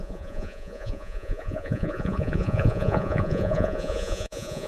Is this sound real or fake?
fake